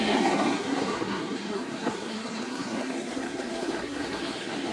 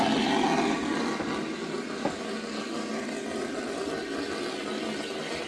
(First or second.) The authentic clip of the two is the second